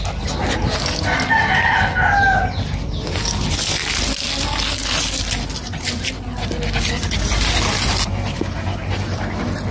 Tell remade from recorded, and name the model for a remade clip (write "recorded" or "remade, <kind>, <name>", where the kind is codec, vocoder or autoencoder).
recorded